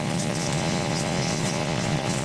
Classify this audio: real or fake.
fake